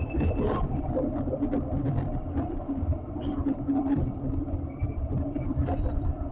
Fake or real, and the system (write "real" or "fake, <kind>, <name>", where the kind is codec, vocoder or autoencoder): fake, vocoder, BigVGAN v2